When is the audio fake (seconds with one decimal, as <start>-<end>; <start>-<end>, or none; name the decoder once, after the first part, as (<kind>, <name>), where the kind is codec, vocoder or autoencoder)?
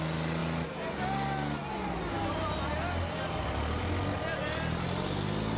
none